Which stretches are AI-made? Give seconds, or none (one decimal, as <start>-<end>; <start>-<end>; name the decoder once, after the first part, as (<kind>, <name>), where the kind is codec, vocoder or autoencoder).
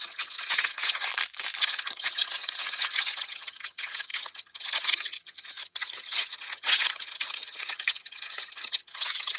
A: 0.0-1.1 (vocoder, HiFi-GAN); 1.6-9.4